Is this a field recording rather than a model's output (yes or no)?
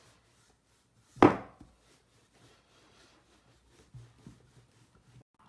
yes